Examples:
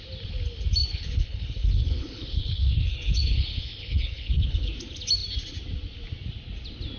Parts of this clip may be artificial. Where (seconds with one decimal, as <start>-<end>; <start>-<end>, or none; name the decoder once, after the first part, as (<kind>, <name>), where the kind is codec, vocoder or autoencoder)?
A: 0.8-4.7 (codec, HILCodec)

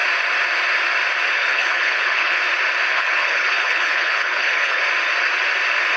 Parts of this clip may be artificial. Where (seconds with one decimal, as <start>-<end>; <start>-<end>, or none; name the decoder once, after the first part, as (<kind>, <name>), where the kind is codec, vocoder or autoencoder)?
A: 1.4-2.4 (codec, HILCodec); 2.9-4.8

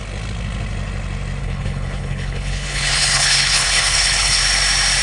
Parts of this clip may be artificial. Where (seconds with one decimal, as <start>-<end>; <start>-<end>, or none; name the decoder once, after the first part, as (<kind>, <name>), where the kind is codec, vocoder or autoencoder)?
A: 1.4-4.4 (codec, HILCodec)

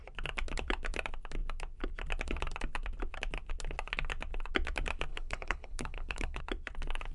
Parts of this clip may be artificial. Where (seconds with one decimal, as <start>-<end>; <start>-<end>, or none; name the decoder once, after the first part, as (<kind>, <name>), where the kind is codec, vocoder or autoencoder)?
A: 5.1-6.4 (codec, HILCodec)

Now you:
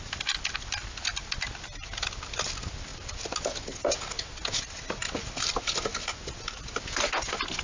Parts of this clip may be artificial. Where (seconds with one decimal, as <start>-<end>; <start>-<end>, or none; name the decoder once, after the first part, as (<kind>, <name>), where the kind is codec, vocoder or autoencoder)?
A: none

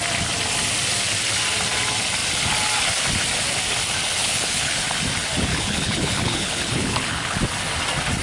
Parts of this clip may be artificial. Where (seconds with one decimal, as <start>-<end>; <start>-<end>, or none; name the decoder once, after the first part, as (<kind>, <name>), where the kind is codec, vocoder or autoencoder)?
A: 4.2-4.8 (codec, HILCodec); 5.5-7.4